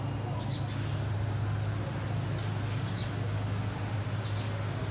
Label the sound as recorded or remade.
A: recorded